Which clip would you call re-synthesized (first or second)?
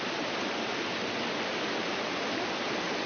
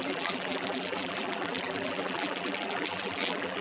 second